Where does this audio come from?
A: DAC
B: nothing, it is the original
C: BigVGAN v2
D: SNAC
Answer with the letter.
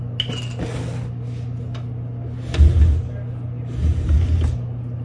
B